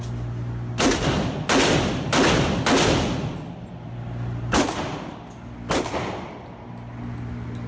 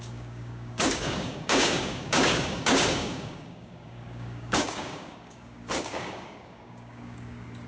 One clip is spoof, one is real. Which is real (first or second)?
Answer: first